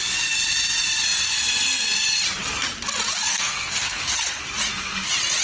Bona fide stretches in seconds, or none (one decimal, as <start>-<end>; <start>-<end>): 0.0-3.3; 4.0-5.4